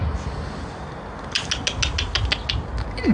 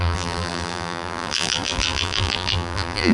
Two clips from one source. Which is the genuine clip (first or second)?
first